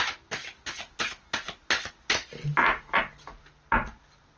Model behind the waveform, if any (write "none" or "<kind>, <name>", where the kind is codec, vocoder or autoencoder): none